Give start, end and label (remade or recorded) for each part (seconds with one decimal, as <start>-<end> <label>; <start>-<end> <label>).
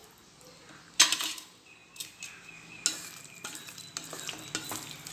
0.0-5.1 recorded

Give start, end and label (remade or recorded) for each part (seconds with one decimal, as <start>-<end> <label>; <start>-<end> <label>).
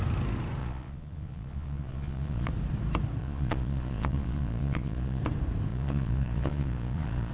0.0-0.6 recorded; 0.6-2.5 remade; 2.5-3.2 recorded; 3.2-5.2 remade; 5.2-5.7 recorded; 5.7-7.3 remade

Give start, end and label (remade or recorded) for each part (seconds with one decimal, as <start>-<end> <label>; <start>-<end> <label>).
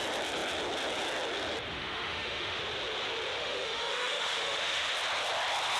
0.0-1.7 recorded; 1.7-2.6 remade; 2.6-3.4 recorded; 3.4-4.9 remade; 4.9-5.8 recorded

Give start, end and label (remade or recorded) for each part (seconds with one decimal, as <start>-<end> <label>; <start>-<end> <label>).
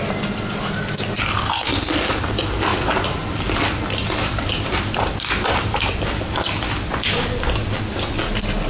0.0-2.7 recorded; 2.7-7.8 remade; 7.8-8.7 recorded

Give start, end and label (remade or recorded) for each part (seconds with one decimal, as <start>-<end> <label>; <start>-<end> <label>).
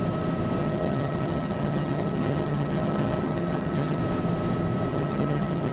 0.0-0.6 recorded; 0.6-4.0 remade; 4.0-4.9 recorded; 4.9-5.7 remade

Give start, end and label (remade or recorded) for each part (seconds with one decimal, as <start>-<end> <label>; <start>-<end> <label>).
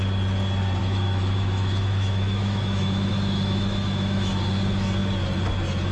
0.0-0.8 recorded; 0.8-4.3 remade; 4.3-5.9 recorded